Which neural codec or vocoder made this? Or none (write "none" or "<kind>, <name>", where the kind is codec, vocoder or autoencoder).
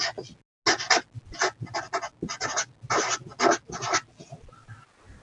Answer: none